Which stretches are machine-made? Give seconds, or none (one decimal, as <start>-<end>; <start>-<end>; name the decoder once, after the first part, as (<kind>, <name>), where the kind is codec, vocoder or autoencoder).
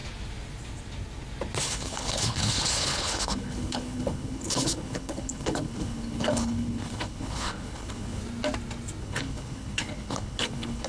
1.6-8.2 (codec, HILCodec); 9.0-10.9